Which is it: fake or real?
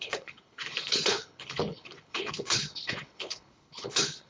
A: fake